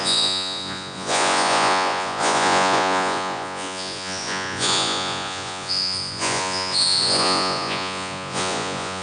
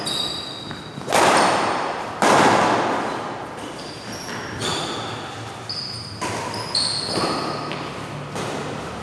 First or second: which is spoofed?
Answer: first